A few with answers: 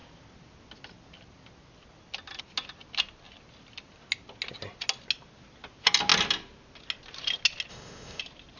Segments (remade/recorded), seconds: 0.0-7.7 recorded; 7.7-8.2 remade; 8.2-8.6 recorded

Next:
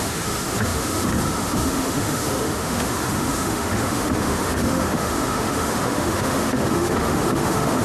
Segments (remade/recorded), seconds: 0.0-7.8 remade

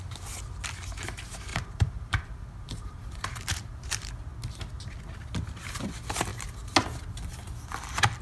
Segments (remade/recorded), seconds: 0.0-1.5 recorded; 1.5-4.1 remade; 4.1-8.2 recorded

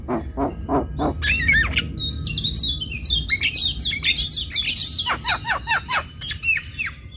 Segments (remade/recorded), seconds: 0.0-7.2 recorded

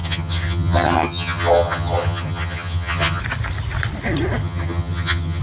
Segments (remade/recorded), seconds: 0.0-3.2 remade; 3.2-4.4 recorded; 4.4-5.4 remade

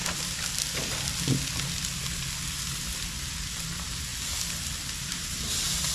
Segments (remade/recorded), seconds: 0.0-3.5 recorded; 3.5-4.1 remade; 4.1-5.0 recorded; 5.0-5.9 remade

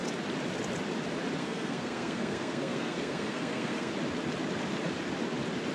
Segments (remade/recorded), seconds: 0.0-1.4 recorded; 1.4-3.9 remade; 3.9-5.7 recorded